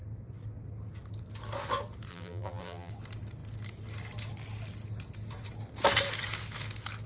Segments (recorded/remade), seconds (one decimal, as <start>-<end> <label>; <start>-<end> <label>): 0.0-2.1 recorded; 2.1-2.9 remade; 2.9-7.1 recorded